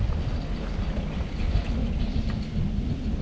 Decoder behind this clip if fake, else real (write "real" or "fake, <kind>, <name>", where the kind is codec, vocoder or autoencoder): real